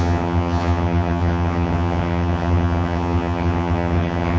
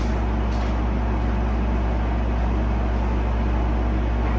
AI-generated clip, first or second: first